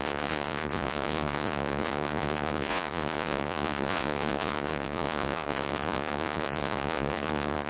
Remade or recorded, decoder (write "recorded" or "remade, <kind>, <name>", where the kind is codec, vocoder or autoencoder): remade, vocoder, Vocos